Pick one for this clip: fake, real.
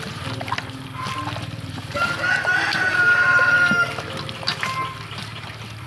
real